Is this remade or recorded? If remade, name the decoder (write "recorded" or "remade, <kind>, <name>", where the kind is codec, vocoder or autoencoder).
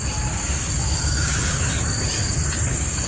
recorded